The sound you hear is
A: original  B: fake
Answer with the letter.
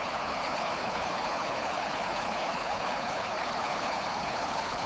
B